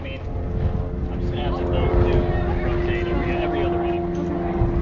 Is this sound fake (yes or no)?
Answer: no